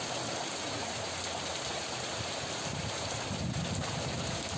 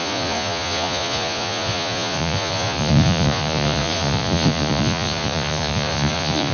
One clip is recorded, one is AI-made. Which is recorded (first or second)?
first